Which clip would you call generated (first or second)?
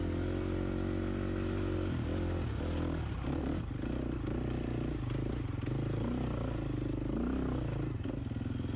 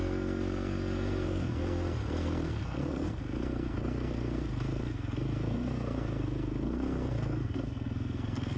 second